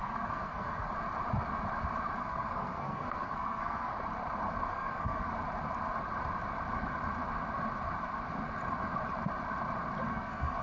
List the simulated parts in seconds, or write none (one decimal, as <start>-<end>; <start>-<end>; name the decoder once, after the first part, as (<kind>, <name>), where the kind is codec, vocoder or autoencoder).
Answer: 0.0-0.9 (codec, SNAC); 2.2-3.9; 4.7-5.3; 10.1-10.6